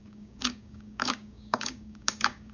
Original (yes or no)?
no